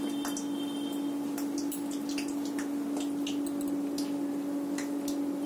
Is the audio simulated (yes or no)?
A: no